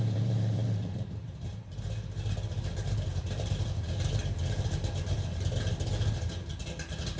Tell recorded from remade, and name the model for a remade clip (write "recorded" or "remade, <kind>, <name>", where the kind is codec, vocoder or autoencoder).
remade, vocoder, BigVGAN v2